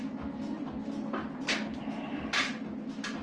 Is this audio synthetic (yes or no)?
no